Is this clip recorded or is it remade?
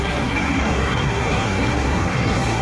remade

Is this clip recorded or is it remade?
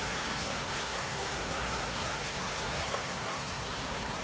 remade